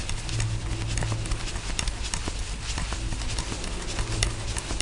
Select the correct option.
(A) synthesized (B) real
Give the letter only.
B